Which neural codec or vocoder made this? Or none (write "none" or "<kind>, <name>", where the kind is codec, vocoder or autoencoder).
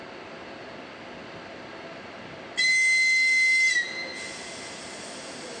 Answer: none